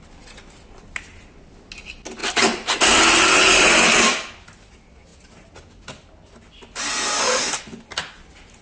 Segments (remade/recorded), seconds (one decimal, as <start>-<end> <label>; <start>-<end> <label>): 0.0-2.2 recorded; 2.2-2.9 remade; 2.9-8.6 recorded